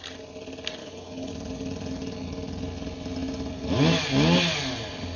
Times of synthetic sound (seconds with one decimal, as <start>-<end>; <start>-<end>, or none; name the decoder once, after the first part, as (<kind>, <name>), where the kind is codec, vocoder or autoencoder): 0.8-1.3 (codec, HILCodec)